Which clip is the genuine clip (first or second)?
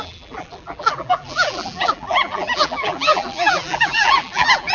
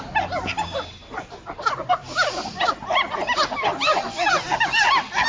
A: second